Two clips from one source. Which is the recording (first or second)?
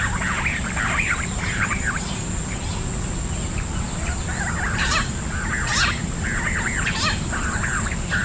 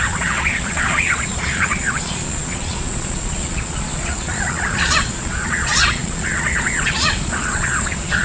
first